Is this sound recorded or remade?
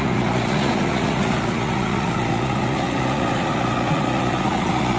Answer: remade